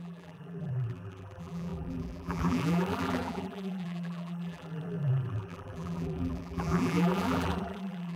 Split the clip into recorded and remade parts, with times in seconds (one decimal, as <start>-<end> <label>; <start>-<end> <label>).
0.0-8.2 remade